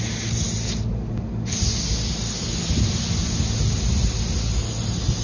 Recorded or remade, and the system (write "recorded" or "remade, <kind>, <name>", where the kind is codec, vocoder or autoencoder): recorded